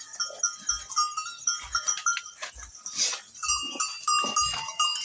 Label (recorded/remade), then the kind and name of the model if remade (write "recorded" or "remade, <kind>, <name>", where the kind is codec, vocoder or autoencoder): recorded